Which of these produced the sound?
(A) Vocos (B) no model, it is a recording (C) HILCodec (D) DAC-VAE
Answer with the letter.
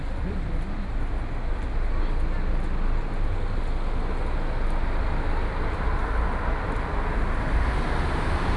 B